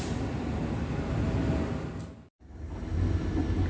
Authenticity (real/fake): real